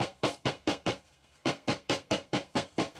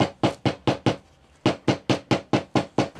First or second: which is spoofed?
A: first